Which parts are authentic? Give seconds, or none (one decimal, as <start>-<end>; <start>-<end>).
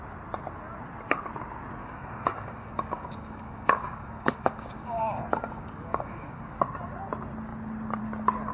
0.0-1.8; 6.6-8.5